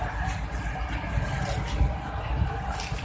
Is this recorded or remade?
recorded